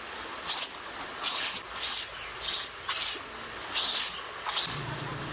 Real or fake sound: real